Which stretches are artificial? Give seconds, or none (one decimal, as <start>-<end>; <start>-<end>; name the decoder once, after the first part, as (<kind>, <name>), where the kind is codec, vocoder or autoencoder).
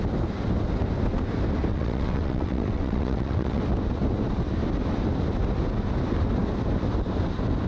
1.7-3.6 (vocoder, WaveNeXt)